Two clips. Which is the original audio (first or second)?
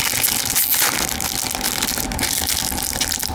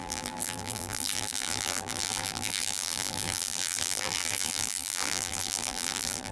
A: first